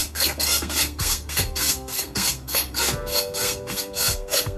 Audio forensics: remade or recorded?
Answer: remade